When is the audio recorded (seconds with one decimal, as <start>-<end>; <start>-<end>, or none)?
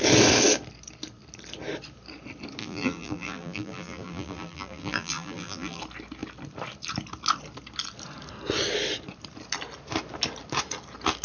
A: 0.0-2.6; 5.8-11.2